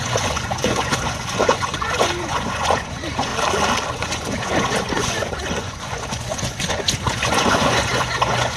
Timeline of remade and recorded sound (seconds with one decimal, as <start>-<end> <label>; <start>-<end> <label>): 0.0-3.3 remade; 3.3-3.9 recorded; 3.9-8.6 remade